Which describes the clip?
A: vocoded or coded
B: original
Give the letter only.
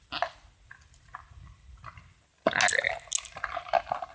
B